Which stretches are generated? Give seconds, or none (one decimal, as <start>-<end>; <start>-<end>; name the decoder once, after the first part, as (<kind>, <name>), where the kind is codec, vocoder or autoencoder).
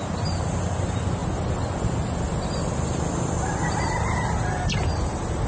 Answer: none